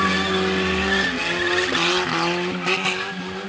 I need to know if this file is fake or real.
real